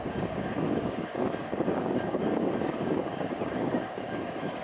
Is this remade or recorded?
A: remade